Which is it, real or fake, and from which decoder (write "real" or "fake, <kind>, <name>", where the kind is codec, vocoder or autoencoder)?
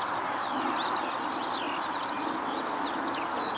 real